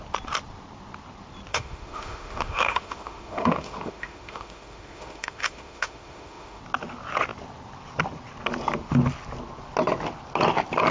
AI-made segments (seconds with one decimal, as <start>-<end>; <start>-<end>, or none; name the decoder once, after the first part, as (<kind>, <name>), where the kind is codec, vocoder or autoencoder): 1.5-6.6 (autoencoder, DAC-VAE)